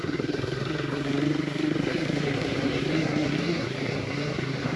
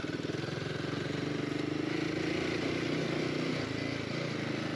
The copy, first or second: first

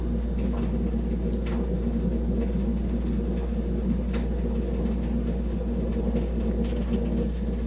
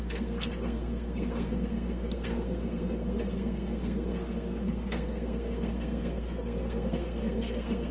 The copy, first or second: second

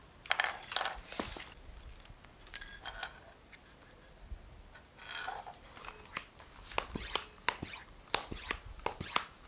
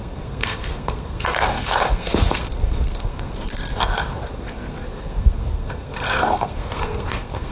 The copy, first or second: second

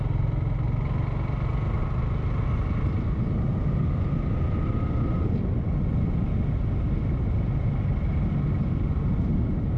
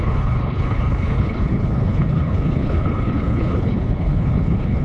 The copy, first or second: second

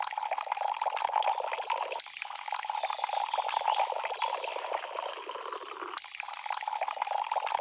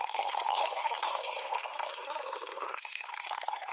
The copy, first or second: second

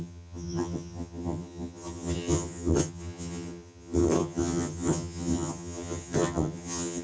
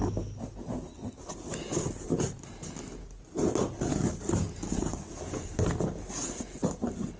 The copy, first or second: first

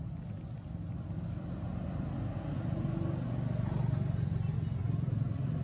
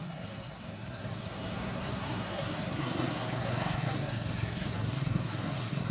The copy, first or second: second